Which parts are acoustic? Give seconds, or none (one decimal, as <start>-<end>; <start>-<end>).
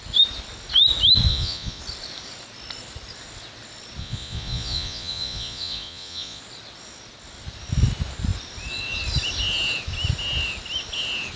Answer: 0.0-1.3; 1.8-4.0; 6.4-11.4